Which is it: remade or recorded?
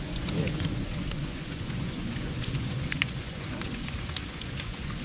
remade